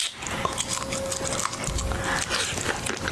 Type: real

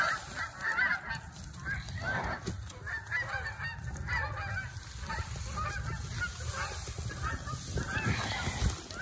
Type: real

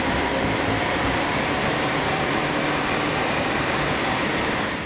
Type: fake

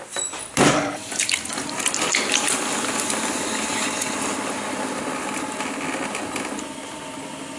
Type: real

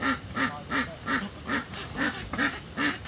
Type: real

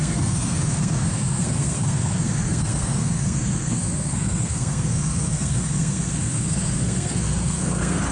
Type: fake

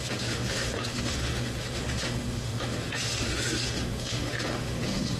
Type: fake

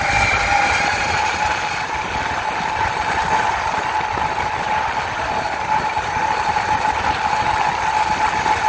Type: real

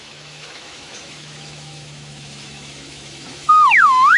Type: fake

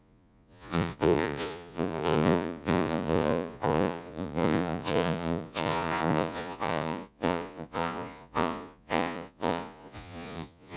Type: fake